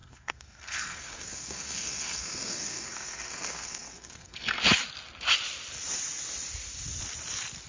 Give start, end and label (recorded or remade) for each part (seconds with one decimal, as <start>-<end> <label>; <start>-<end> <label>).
0.0-4.6 remade; 4.6-7.7 recorded